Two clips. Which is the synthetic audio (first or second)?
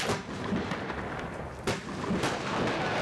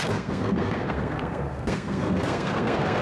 second